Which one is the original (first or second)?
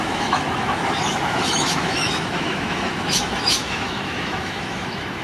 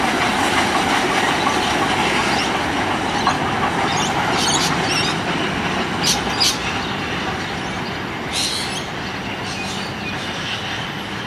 second